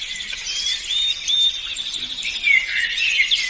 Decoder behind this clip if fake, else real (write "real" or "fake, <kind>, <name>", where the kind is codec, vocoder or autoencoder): real